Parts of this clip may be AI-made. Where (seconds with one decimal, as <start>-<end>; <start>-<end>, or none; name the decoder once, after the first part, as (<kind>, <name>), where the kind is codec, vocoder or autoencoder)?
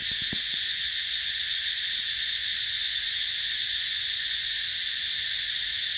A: 0.4-2.0 (vocoder, Vocos); 2.4-4.7